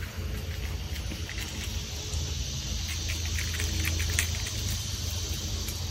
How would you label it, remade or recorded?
recorded